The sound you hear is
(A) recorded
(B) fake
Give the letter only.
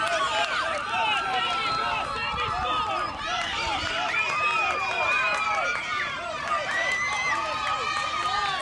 B